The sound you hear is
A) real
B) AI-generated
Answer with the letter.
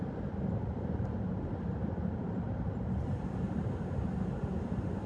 A